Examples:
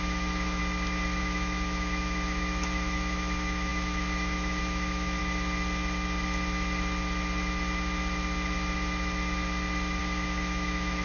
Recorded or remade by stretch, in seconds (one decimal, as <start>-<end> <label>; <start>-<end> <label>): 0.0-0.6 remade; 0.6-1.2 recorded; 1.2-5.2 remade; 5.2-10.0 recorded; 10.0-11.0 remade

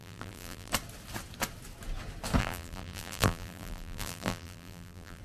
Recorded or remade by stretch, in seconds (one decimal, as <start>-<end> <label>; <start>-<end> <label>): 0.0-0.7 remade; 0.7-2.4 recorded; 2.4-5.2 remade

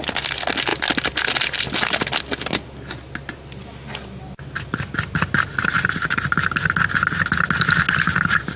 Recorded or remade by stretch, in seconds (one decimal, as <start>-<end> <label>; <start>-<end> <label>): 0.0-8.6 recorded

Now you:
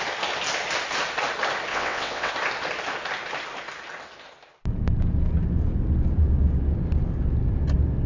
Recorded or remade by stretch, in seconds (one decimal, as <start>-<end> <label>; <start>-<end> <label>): 0.0-1.7 recorded; 1.7-2.3 remade; 2.3-8.1 recorded